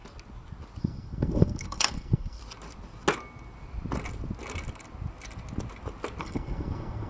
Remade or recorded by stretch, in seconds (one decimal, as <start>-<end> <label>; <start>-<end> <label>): 0.0-0.8 recorded; 0.8-2.4 remade; 2.4-6.2 recorded; 6.2-7.1 remade